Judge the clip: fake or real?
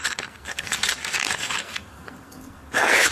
fake